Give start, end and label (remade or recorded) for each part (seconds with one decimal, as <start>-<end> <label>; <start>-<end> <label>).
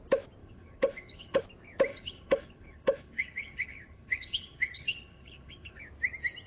0.0-0.4 recorded; 0.4-1.4 remade; 1.4-1.9 recorded; 1.9-5.8 remade; 5.8-6.5 recorded